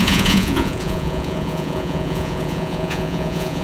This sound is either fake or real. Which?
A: fake